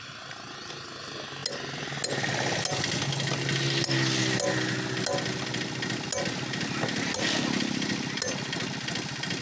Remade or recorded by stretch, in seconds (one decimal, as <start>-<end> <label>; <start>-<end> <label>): 0.0-9.4 recorded